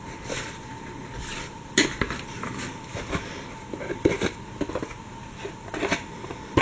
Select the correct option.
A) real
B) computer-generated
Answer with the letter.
A